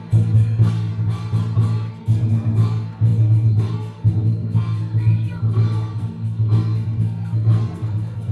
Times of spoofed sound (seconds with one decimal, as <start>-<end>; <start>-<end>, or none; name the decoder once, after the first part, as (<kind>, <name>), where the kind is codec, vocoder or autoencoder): 0.0-0.9 (codec, SNAC); 1.9-8.3